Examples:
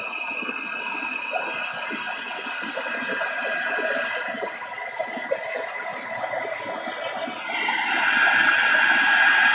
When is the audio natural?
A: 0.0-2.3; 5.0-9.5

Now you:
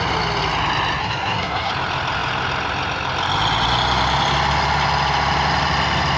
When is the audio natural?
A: 0.0-1.0; 1.7-6.2

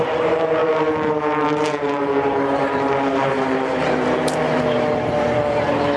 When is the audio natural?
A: none